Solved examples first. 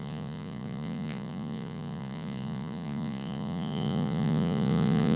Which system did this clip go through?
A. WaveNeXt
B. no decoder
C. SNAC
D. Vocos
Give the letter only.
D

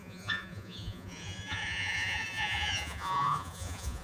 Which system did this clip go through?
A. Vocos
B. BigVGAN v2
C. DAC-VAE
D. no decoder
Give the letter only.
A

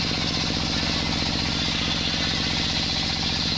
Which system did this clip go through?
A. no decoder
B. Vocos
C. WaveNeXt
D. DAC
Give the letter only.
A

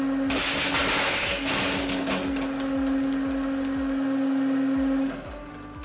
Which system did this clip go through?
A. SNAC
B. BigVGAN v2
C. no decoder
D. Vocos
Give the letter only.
C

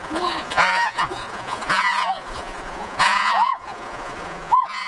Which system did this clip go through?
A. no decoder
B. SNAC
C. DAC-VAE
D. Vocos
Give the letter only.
D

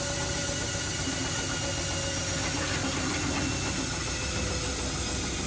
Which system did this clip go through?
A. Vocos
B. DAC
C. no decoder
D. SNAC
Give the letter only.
C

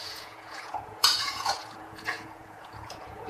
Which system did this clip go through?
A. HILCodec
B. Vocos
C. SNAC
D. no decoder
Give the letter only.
B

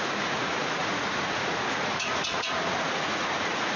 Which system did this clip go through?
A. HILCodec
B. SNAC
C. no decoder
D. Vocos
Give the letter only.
D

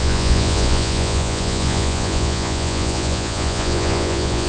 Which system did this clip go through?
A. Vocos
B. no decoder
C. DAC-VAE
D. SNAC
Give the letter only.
A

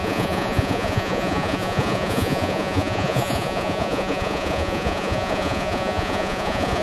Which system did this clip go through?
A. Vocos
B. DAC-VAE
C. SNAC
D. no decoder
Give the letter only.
A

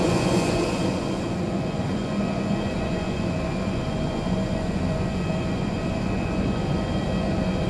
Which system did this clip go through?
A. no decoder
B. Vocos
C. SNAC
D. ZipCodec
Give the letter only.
B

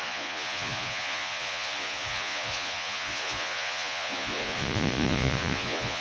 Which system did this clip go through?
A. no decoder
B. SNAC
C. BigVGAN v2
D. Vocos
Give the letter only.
D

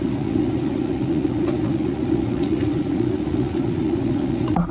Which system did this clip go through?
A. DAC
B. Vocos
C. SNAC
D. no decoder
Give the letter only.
B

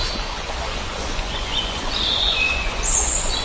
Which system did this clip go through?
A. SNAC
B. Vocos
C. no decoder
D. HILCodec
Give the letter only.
B